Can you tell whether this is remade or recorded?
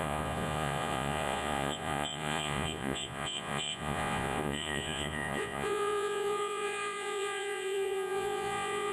remade